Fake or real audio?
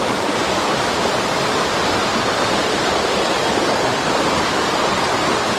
fake